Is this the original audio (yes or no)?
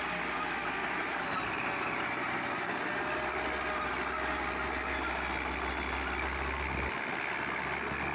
yes